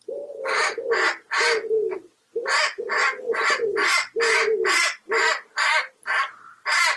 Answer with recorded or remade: recorded